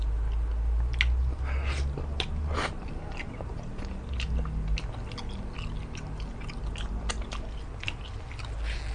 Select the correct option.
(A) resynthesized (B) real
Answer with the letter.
B